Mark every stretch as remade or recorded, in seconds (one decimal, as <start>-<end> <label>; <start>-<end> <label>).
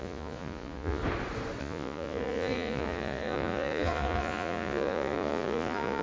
0.0-1.0 remade; 1.0-1.6 recorded; 1.6-6.0 remade